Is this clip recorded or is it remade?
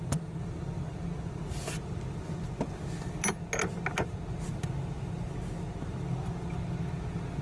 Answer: recorded